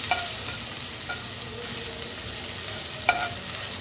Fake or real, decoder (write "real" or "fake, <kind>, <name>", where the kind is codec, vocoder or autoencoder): real